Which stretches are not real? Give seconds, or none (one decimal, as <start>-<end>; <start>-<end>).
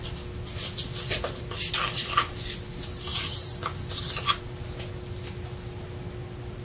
none